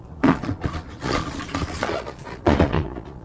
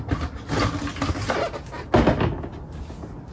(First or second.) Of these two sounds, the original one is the second